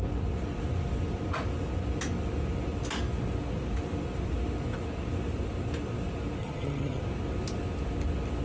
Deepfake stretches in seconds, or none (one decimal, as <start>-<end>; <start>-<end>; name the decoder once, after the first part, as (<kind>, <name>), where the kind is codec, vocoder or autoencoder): 6.4-7.0 (vocoder, HiFi-GAN)